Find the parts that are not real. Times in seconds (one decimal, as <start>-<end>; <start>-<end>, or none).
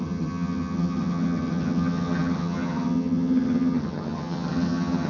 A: 0.0-5.1